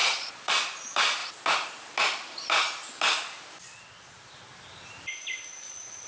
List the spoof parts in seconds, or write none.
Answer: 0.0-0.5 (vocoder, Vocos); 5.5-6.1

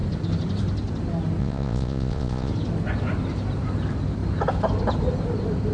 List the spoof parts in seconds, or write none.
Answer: 1.4-2.5 (vocoder, Vocos)